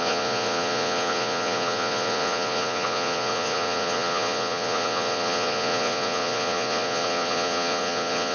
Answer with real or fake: fake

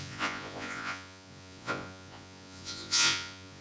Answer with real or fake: fake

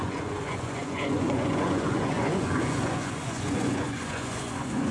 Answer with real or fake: fake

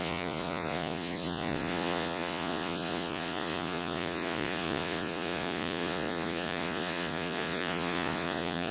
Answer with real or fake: fake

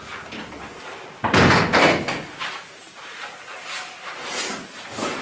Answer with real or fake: real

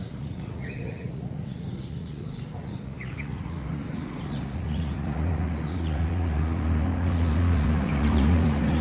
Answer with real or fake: fake